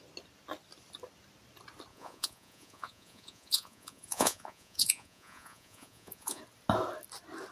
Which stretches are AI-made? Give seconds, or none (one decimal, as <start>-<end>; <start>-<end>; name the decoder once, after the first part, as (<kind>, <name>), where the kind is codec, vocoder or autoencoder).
1.9-6.4 (vocoder, Vocos)